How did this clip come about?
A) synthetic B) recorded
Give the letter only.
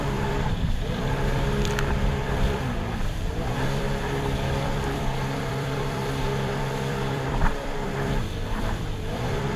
A